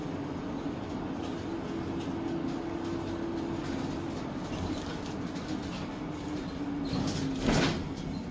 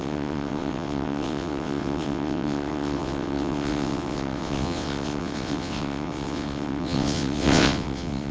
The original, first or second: first